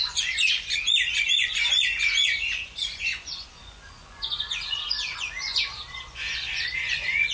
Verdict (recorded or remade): remade